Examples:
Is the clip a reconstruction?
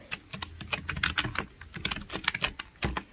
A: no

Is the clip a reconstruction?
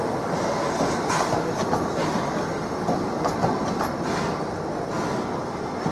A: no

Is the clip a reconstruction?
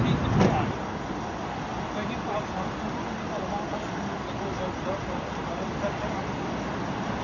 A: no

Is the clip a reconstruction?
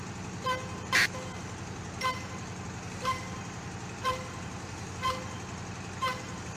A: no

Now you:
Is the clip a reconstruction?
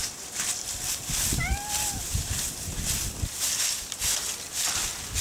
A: yes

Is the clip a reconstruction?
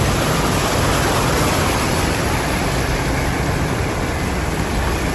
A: yes